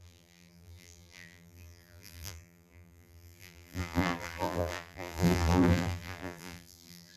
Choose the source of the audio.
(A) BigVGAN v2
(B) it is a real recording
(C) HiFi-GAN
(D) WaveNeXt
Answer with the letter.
A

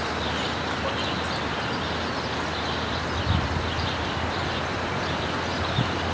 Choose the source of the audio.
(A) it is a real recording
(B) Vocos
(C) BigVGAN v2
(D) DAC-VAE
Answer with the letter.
A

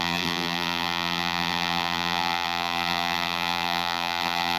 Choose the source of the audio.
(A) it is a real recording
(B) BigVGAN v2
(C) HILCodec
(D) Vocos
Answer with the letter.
B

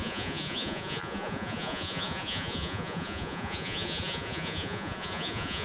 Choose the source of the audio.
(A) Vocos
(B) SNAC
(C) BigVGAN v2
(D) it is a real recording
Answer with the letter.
A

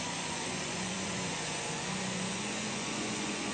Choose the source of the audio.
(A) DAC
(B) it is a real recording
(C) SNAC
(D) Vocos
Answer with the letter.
D